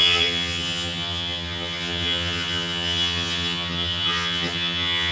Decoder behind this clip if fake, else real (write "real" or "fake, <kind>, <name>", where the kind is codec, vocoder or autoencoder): fake, vocoder, HiFi-GAN